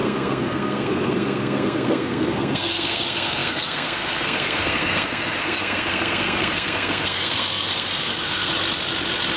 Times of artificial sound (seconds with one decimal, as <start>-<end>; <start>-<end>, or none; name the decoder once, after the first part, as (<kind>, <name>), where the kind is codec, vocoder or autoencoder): 0.0-8.5 (codec, SNAC)